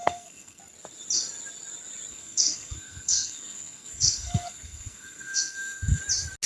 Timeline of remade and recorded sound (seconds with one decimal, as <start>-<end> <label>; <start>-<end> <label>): 0.0-0.6 remade; 0.6-2.1 recorded; 2.1-6.0 remade; 6.0-6.5 recorded